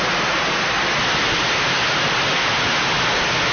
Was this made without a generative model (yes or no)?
yes